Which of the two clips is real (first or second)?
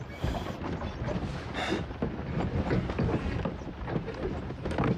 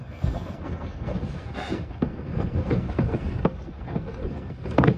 first